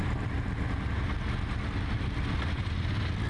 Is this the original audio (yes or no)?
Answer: yes